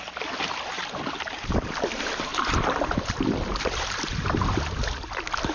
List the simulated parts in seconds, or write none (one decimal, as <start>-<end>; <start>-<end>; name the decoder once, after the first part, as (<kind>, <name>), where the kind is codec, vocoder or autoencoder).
0.0-5.5 (vocoder, BigVGAN v2)